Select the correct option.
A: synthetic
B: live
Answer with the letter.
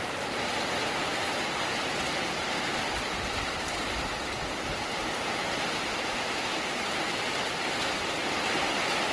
B